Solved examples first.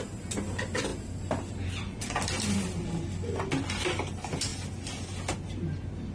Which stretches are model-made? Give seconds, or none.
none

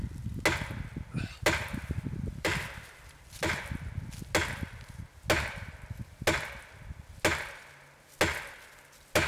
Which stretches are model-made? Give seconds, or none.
1.8-3.6 (vocoder, BigVGAN v2)

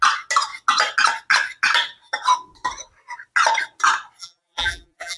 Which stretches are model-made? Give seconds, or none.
4.2-5.2 (vocoder, BigVGAN v2)

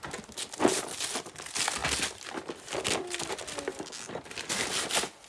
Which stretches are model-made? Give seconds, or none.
none

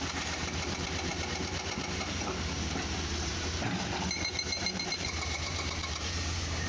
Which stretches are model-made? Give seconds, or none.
0.0-6.7 (vocoder, BigVGAN v2)

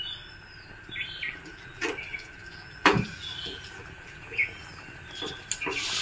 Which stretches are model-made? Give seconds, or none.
1.2-4.7 (vocoder, BigVGAN v2)